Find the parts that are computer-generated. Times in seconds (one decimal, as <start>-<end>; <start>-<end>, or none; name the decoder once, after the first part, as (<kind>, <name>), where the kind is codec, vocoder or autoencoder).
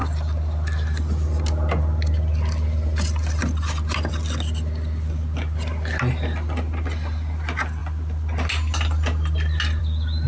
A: none